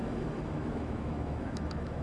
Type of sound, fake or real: fake